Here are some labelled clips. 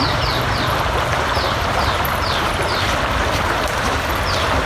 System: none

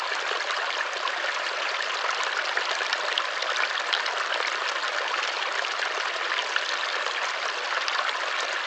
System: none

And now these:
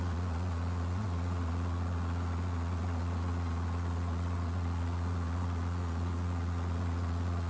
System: vocoder, Vocos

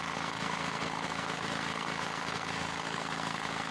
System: codec, SNAC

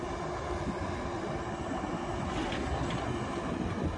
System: none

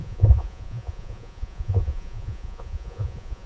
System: vocoder, Vocos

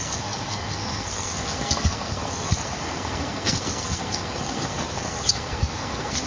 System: codec, SNAC